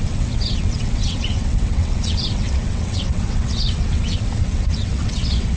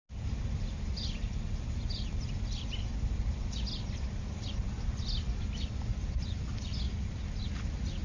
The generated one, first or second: first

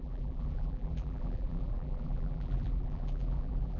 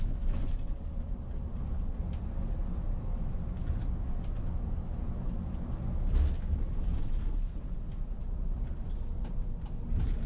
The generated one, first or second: first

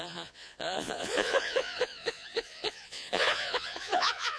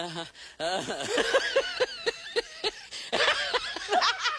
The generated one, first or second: first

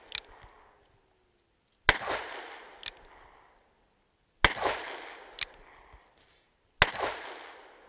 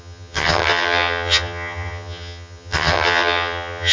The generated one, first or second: second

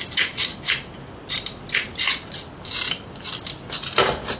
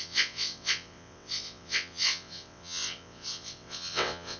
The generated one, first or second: second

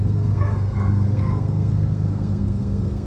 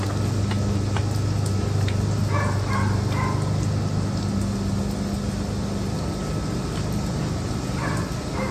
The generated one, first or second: first